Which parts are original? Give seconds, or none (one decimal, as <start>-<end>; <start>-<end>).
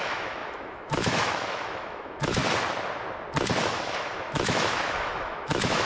2.4-3.7